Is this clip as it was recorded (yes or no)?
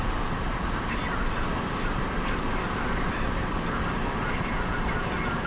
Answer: no